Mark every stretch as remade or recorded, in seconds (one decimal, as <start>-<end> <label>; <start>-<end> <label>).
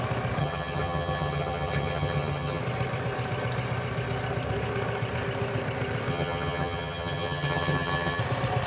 0.0-0.4 recorded; 0.4-2.6 remade; 2.6-6.1 recorded; 6.1-8.2 remade; 8.2-8.7 recorded